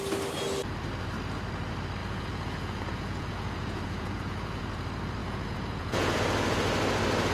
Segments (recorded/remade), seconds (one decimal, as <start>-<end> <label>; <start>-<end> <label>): 0.0-2.0 recorded; 2.0-4.6 remade; 4.6-5.2 recorded; 5.2-6.2 remade; 6.2-7.3 recorded